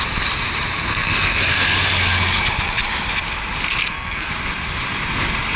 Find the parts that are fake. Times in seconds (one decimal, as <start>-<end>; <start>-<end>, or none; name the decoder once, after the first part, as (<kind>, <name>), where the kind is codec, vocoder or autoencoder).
0.9-1.4 (codec, SNAC); 3.8-4.3